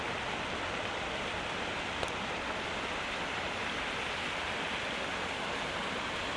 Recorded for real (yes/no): yes